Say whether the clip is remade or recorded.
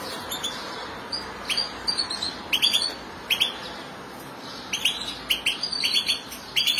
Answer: recorded